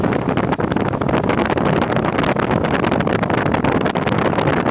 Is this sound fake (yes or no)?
no